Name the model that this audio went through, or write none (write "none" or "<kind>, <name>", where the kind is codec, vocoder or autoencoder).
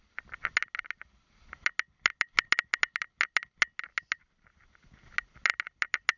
none